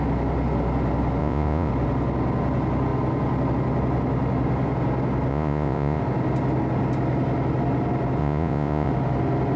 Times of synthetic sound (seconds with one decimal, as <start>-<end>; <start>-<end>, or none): 1.2-1.7; 5.3-6.0; 8.2-8.9